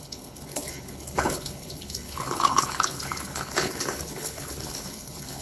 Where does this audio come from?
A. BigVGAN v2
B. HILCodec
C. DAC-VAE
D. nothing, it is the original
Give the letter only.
B